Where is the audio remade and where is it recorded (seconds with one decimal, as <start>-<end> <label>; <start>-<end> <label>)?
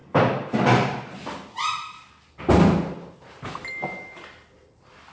0.0-5.1 recorded